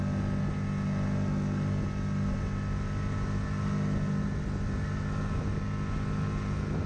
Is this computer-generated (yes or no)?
no